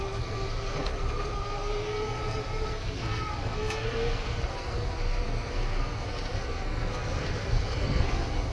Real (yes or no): no